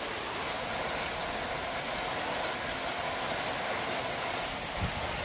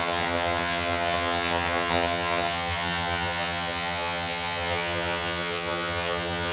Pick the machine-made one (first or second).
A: second